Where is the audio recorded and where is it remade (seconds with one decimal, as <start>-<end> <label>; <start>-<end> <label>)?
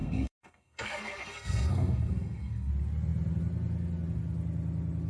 0.0-2.7 remade; 2.7-5.1 recorded